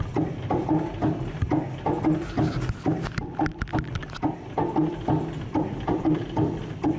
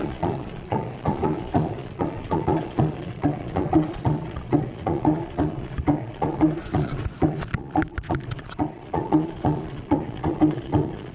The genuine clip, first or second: first